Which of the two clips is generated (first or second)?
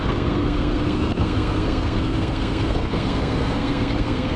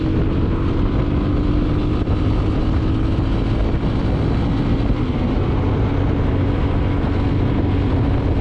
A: first